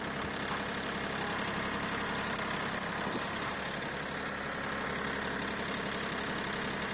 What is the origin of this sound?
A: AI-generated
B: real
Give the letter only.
B